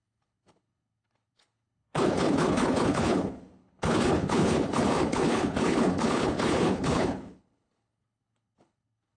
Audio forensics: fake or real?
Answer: fake